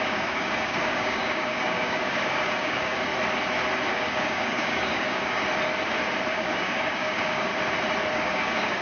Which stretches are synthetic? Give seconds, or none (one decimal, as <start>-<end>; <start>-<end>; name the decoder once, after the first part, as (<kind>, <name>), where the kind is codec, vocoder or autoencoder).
0.0-3.1 (codec, DAC); 3.9-5.4; 6.3-7.5; 8.1-8.8